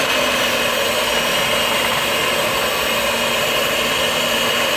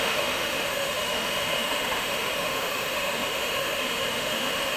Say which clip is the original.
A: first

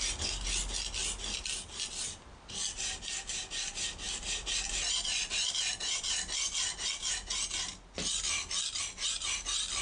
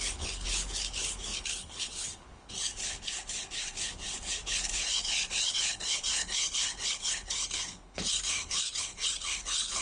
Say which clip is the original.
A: first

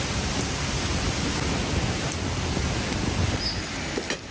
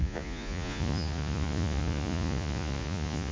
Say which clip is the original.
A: first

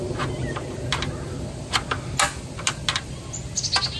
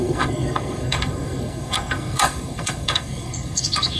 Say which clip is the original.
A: first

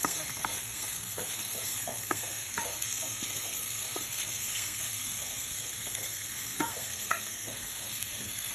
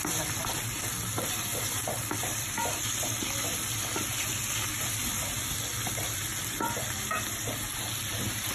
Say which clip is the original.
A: second